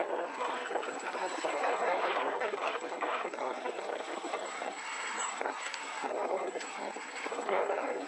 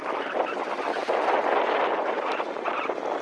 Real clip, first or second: second